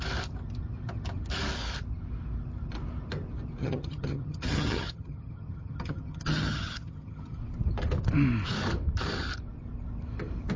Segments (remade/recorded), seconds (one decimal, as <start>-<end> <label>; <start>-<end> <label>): 0.0-3.6 recorded; 3.6-7.4 remade; 7.4-10.6 recorded